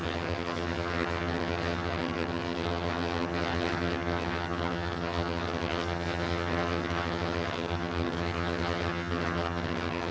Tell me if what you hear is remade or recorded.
remade